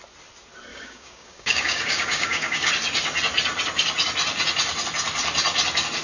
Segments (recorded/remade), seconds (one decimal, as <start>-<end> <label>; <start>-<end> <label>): 0.0-0.7 recorded; 0.7-2.7 remade; 2.7-6.0 recorded